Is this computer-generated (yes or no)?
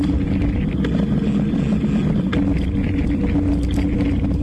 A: no